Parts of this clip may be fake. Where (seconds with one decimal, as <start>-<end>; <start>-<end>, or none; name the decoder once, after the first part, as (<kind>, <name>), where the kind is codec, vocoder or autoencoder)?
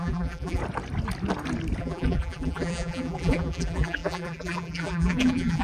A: 0.0-0.6 (vocoder, BigVGAN v2); 1.8-5.6